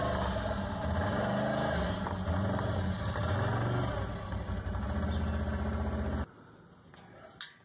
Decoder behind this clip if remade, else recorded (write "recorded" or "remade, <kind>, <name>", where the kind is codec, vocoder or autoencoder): recorded